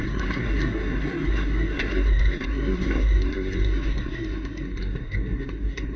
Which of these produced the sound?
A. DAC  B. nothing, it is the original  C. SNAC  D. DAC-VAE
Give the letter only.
C